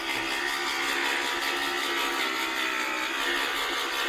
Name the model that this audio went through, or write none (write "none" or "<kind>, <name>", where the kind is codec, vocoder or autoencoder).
none